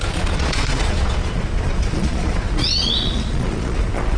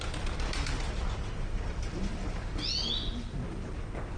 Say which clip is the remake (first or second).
first